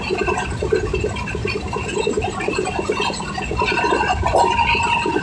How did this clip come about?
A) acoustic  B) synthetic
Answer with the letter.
A